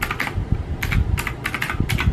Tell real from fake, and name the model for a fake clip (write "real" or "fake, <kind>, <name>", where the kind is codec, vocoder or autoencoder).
real